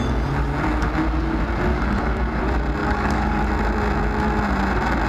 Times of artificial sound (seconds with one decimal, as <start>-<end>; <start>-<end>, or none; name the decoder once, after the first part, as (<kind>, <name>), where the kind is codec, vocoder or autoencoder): 1.7-2.4 (codec, DAC); 2.8-3.5